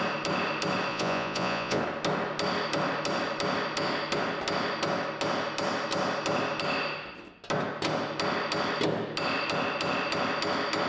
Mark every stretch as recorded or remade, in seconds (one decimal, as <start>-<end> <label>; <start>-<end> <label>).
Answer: 0.0-0.9 recorded; 0.9-1.8 remade; 1.8-10.9 recorded